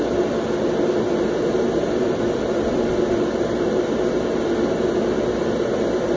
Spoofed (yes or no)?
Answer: no